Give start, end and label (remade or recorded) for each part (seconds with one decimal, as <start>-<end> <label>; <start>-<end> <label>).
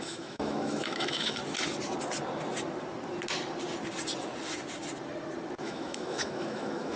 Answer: 0.0-1.4 remade; 1.4-5.6 recorded; 5.6-7.0 remade